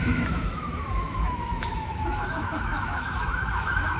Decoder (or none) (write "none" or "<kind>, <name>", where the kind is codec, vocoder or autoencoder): autoencoder, DAC-VAE